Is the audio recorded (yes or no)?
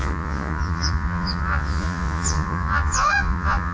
no